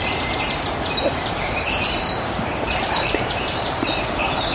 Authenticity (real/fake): fake